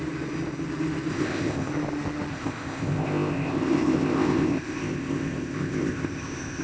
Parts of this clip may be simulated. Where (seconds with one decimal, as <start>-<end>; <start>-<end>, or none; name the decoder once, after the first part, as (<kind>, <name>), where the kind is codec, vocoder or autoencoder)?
1.1-1.7 (codec, ZipCodec); 2.3-6.6